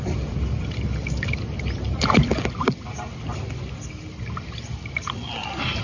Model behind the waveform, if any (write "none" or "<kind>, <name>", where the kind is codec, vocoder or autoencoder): none